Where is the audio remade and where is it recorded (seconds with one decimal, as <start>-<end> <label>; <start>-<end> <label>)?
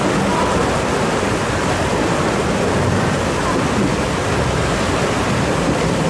0.0-6.1 recorded